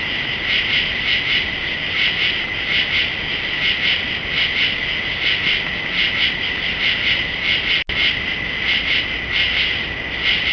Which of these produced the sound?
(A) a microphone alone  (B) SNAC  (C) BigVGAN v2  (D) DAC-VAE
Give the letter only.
A